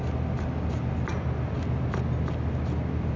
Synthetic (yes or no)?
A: no